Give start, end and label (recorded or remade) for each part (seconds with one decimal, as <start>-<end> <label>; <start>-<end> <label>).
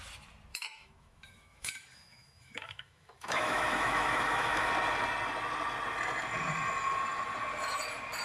0.0-0.5 recorded; 0.5-4.7 remade; 4.7-8.2 recorded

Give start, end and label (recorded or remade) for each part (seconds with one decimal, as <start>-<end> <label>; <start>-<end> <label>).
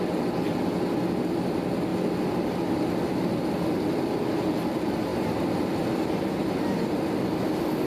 0.0-7.9 recorded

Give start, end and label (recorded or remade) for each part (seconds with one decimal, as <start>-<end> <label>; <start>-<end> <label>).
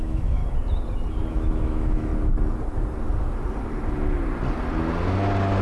0.0-0.4 remade; 0.4-1.3 recorded; 1.3-2.1 remade; 2.1-5.6 recorded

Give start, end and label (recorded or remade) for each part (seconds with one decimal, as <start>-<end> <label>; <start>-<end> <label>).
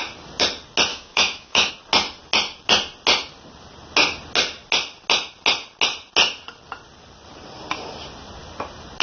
0.0-0.9 recorded; 0.9-1.7 remade; 1.7-9.0 recorded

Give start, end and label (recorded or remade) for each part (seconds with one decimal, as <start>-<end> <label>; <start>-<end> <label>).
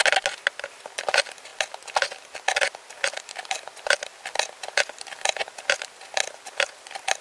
0.0-7.2 recorded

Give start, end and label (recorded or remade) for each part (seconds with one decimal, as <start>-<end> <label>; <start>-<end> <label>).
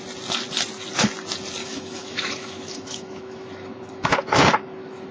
0.0-1.6 recorded; 1.6-5.1 remade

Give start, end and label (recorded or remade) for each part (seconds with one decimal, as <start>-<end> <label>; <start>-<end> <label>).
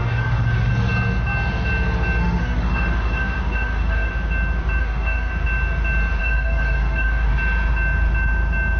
0.0-0.7 remade; 0.7-2.2 recorded; 2.2-4.1 remade; 4.1-4.8 recorded; 4.8-5.3 remade; 5.3-6.2 recorded; 6.2-7.3 remade; 7.3-8.8 recorded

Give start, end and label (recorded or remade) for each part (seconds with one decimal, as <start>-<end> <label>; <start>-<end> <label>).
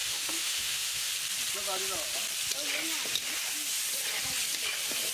0.0-1.1 remade; 1.1-5.1 recorded